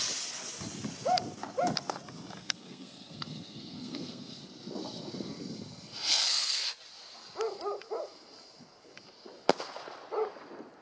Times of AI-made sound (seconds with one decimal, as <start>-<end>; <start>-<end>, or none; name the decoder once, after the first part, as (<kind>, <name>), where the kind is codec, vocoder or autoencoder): 2.4-4.4 (codec, SNAC); 6.1-6.7